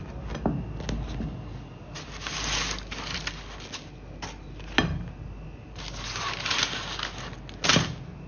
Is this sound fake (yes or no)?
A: no